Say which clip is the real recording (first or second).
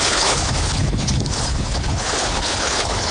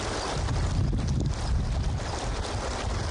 second